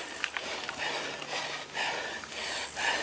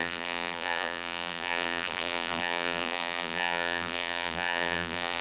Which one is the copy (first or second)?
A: second